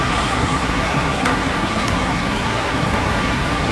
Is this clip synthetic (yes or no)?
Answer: yes